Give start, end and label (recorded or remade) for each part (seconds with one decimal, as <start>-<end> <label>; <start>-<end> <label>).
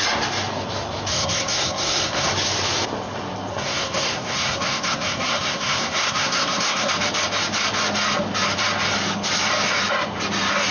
0.0-1.1 recorded; 1.1-2.3 remade; 2.3-3.5 recorded; 3.5-6.9 remade; 6.9-10.7 recorded